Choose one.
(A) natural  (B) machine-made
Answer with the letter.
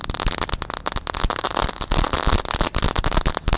A